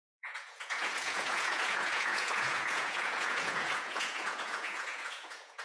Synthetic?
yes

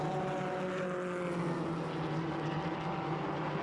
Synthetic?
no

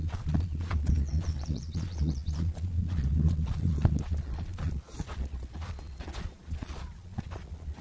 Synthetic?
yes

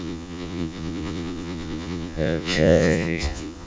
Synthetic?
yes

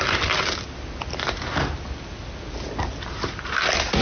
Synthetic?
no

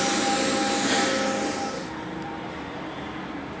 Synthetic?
no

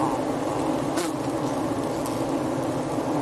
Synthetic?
no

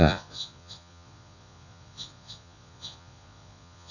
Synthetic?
yes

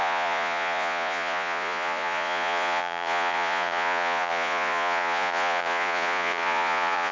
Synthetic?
yes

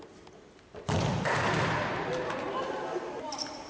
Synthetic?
no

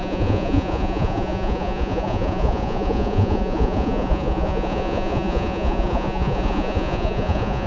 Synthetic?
yes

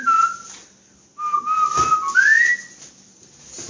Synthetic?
no